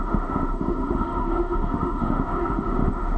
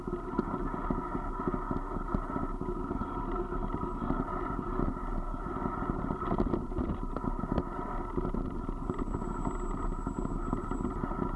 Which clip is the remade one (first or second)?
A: first